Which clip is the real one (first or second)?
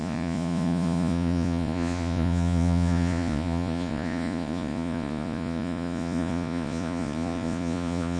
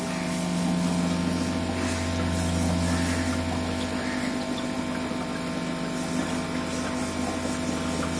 second